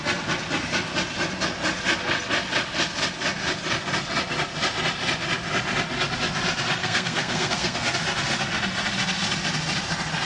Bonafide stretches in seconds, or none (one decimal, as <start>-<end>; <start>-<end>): 0.0-6.8; 7.9-10.3